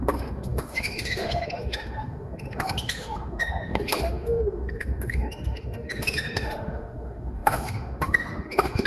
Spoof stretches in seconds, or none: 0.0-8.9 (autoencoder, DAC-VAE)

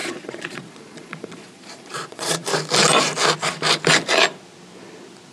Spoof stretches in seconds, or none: 0.0-2.5 (vocoder, Vocos)